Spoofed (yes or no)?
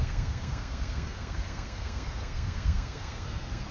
yes